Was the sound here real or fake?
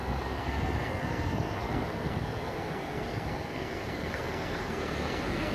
fake